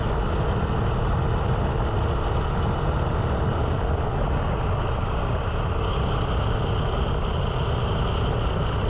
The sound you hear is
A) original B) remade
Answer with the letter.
A